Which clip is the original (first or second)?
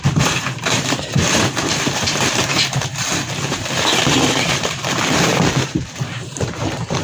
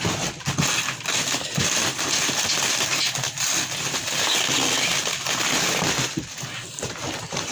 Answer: second